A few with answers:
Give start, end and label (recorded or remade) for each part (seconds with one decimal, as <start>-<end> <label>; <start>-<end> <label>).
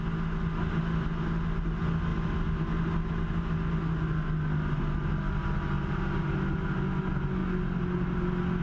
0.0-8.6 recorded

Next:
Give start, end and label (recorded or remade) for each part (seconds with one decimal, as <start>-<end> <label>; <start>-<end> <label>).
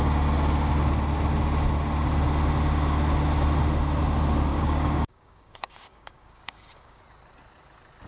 0.0-4.5 recorded; 4.5-7.0 remade; 7.0-8.1 recorded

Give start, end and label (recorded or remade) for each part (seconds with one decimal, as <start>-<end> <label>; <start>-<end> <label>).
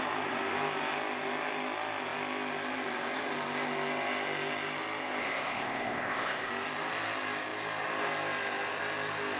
0.0-5.2 recorded; 5.2-6.5 remade; 6.5-9.4 recorded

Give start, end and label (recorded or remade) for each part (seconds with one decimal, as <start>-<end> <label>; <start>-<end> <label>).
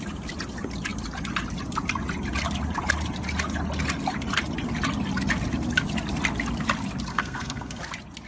0.0-7.1 recorded; 7.1-7.8 remade; 7.8-8.3 recorded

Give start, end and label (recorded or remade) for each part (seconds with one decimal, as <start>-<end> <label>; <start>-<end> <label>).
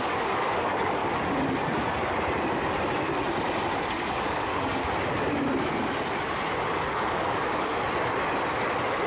0.0-1.0 remade; 1.0-3.8 recorded; 3.8-4.8 remade; 4.8-6.7 recorded; 6.7-7.7 remade; 7.7-9.1 recorded